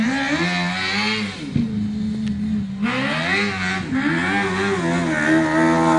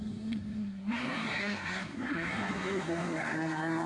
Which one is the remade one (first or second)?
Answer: second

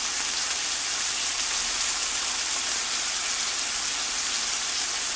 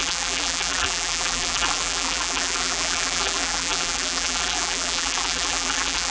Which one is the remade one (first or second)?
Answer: second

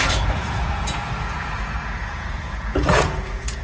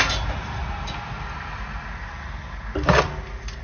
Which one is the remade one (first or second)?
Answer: first